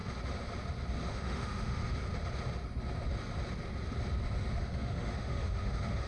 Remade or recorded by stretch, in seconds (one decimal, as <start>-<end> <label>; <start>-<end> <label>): 0.0-1.1 recorded; 1.1-1.8 remade; 1.8-4.6 recorded; 4.6-6.1 remade